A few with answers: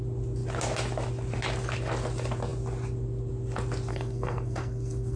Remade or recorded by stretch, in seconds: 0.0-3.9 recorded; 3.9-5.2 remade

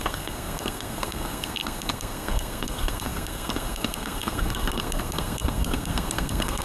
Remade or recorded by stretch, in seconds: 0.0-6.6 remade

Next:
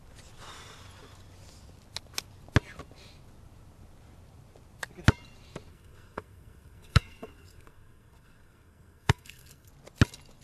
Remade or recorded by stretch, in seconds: 0.0-5.7 recorded; 5.7-9.7 remade; 9.7-10.4 recorded

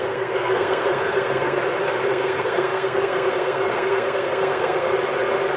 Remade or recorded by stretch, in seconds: 0.0-1.6 remade; 1.6-2.1 recorded; 2.1-4.9 remade; 4.9-5.6 recorded

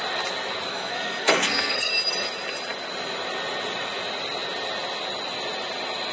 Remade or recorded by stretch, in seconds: 0.0-0.7 recorded; 0.7-1.9 remade; 1.9-6.1 recorded

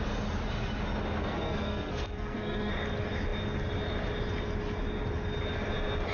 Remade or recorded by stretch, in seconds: 0.0-1.2 recorded; 1.2-2.7 remade; 2.7-6.1 recorded

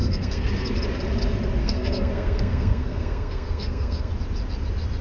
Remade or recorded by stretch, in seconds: 0.0-0.5 remade; 0.5-1.6 recorded; 1.6-4.1 remade; 4.1-5.0 recorded